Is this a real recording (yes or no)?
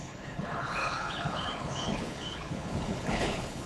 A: no